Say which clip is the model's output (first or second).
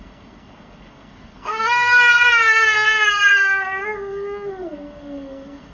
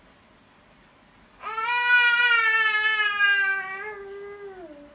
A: first